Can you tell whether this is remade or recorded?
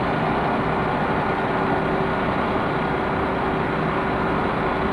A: recorded